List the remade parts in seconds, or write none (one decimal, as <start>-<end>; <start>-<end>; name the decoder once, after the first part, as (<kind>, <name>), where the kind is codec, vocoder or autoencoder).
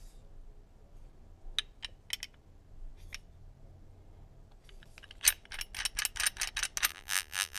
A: 6.9-7.6 (vocoder, BigVGAN v2)